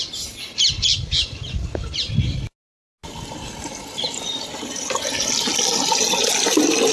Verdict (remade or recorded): recorded